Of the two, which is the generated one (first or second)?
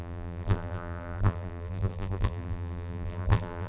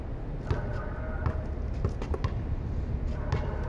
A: first